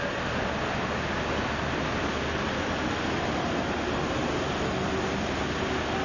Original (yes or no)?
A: yes